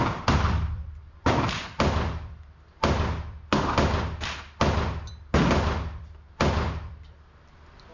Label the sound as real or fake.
real